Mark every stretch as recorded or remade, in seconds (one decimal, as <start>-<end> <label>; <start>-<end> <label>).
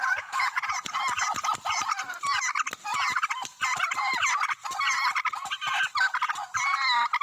0.0-1.0 remade; 1.0-7.2 recorded